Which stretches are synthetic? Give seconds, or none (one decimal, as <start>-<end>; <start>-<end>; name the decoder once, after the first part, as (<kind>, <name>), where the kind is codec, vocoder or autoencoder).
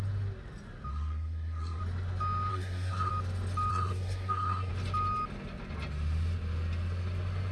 0.9-1.8 (codec, SNAC); 2.5-3.1; 3.7-4.7